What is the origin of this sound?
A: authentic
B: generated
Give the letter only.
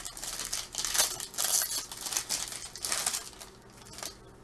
A